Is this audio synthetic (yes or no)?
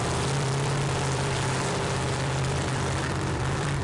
yes